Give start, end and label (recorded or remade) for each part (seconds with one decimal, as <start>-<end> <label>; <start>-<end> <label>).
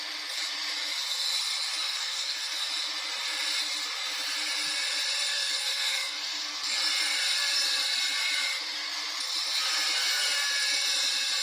0.0-1.8 recorded; 1.8-2.7 remade; 2.7-5.3 recorded; 5.3-6.6 remade; 6.6-11.4 recorded